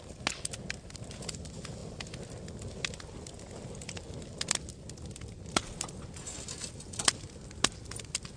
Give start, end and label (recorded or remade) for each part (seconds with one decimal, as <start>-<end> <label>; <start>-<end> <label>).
0.0-8.4 recorded